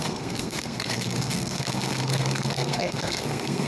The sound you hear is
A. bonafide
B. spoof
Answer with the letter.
B